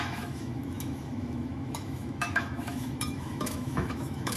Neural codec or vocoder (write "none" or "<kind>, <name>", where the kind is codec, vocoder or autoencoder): autoencoder, DAC-VAE